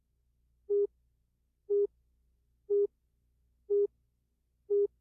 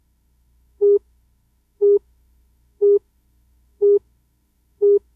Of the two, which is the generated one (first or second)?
second